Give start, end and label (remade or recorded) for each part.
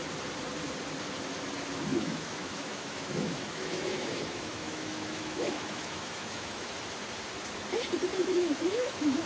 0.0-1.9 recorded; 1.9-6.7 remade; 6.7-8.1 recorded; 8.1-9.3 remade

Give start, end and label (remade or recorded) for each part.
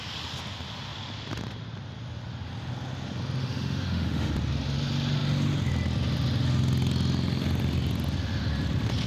0.0-3.4 recorded; 3.4-4.3 remade; 4.3-9.1 recorded